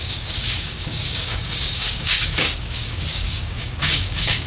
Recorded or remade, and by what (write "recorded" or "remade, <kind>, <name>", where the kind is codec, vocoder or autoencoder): remade, codec, DAC